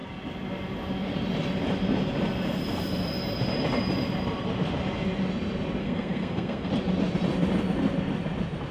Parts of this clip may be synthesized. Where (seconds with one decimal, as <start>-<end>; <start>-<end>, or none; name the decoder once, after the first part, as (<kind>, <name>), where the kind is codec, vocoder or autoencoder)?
5.8-6.7 (codec, SNAC)